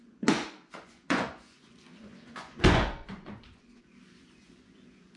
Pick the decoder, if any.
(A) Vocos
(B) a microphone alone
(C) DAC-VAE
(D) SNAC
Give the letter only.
A